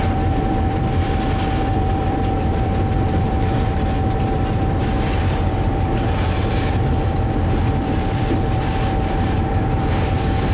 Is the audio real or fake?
fake